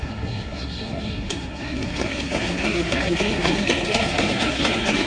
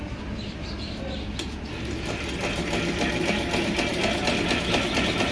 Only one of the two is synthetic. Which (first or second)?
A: first